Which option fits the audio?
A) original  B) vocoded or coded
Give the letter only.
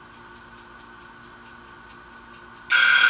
A